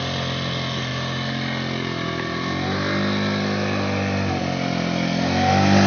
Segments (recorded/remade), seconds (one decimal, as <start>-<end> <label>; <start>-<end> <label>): 0.0-5.9 recorded